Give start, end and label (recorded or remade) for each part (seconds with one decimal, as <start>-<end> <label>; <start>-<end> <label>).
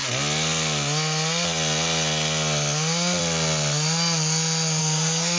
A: 0.0-4.8 recorded; 4.8-5.4 remade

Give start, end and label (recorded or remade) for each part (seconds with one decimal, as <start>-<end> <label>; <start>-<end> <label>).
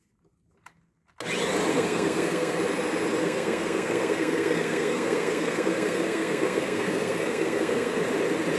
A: 0.0-1.7 recorded; 1.7-2.6 remade; 2.6-3.2 recorded; 3.2-8.0 remade; 8.0-8.6 recorded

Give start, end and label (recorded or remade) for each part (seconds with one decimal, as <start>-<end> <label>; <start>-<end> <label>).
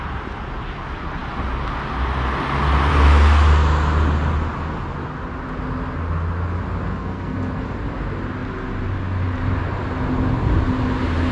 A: 0.0-6.9 recorded; 6.9-7.6 remade; 7.6-11.3 recorded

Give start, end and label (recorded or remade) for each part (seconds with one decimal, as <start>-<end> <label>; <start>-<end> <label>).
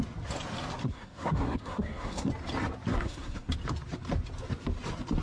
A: 0.0-0.8 recorded; 0.8-2.3 remade; 2.3-2.9 recorded; 2.9-3.5 remade; 3.5-5.2 recorded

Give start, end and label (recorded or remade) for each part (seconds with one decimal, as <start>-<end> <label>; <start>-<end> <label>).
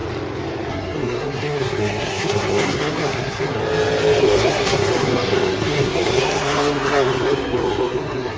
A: 0.0-0.7 recorded; 0.7-3.6 remade; 3.6-4.2 recorded; 4.2-8.4 remade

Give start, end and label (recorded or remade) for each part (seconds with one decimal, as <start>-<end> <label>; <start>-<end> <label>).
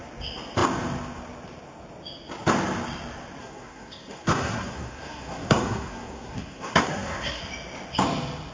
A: 0.0-3.4 recorded; 3.4-7.4 remade; 7.4-8.5 recorded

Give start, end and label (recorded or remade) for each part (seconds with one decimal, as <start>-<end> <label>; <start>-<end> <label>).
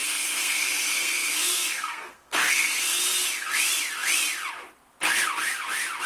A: 0.0-3.0 remade; 3.0-6.1 recorded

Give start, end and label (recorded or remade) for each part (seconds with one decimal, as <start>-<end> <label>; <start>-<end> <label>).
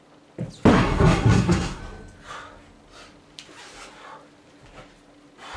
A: 0.0-0.7 recorded; 0.7-1.8 remade; 1.8-5.6 recorded